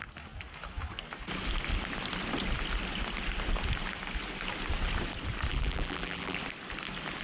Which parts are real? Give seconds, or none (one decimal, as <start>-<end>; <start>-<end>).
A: 0.0-5.5; 6.4-7.2